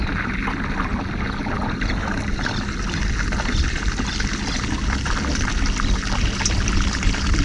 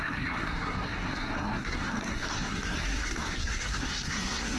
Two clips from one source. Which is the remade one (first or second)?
second